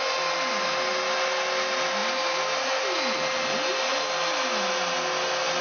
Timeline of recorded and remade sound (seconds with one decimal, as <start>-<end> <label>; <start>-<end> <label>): 0.0-5.6 recorded